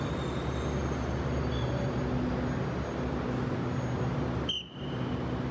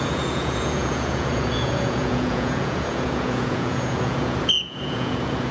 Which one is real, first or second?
first